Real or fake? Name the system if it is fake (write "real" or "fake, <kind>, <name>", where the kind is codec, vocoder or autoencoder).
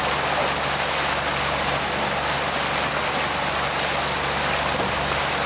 real